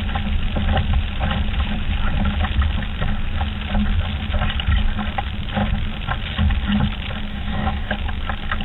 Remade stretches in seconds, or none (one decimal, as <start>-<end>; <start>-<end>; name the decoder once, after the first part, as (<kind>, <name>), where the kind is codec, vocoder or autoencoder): 7.3-7.9 (codec, DAC)